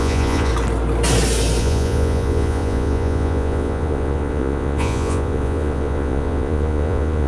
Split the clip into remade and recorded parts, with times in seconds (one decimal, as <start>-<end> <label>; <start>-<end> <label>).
0.0-0.5 remade; 0.5-1.6 recorded; 1.6-7.3 remade